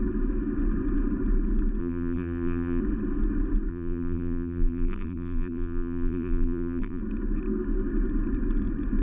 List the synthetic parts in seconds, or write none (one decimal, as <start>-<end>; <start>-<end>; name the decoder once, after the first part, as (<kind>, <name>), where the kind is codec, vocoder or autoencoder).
1.8-2.8 (vocoder, BigVGAN v2); 3.7-7.0